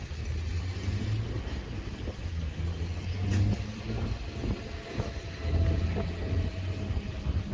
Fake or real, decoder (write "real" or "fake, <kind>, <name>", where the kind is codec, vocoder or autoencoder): real